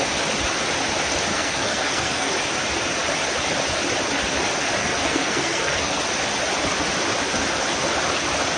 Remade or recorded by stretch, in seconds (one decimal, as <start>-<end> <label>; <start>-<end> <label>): 0.0-1.3 recorded; 1.3-2.3 remade; 2.3-4.8 recorded; 4.8-6.0 remade; 6.0-8.6 recorded